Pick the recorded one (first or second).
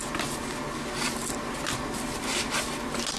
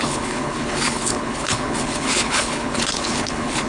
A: first